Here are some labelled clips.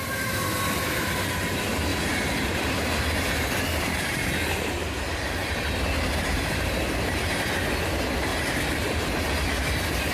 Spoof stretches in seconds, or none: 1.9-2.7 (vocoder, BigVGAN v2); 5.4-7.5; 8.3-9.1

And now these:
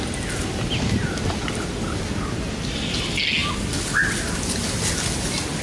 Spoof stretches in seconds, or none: none

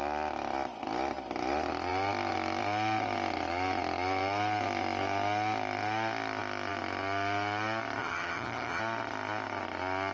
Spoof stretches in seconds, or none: 8.0-8.8 (vocoder, HiFi-GAN)

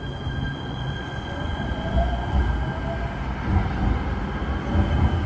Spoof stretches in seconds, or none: 0.5-2.4 (vocoder, Vocos)

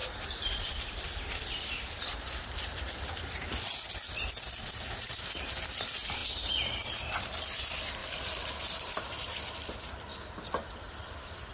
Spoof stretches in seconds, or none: 0.0-3.6 (vocoder, BigVGAN v2); 8.0-9.9

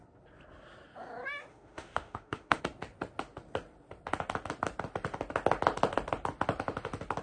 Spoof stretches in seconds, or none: 1.5-2.6 (autoencoder, DAC-VAE)

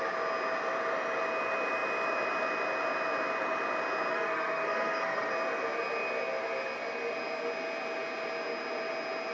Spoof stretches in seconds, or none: 4.1-5.3 (codec, SNAC)